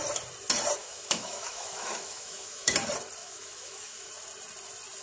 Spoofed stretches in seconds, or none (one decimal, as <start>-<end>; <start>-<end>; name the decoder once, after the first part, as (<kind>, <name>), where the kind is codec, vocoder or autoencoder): 0.8-2.7 (autoencoder, DAC-VAE); 3.2-4.1